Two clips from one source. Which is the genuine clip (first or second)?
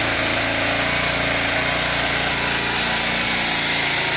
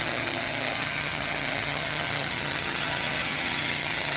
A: first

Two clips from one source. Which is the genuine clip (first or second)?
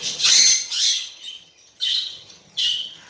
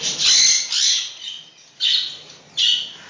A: second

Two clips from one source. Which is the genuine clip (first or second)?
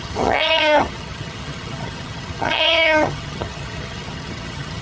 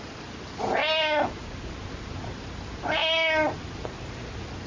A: second